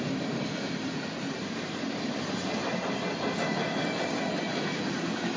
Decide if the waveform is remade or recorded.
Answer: recorded